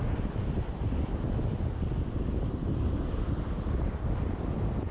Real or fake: real